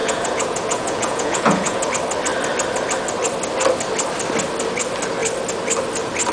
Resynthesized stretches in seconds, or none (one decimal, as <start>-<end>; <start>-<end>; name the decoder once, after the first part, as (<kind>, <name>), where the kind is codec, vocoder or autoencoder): 0.0-1.9 (vocoder, Vocos)